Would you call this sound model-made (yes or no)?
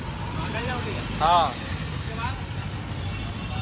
no